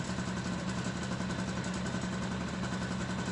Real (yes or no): yes